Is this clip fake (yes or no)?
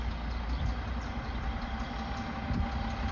no